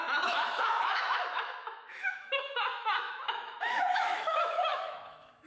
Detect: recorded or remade remade